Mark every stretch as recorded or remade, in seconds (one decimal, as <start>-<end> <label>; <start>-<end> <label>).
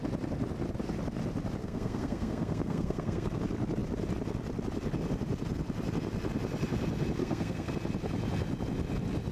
0.0-1.6 recorded; 1.6-3.4 remade; 3.4-7.2 recorded; 7.2-7.7 remade; 7.7-9.3 recorded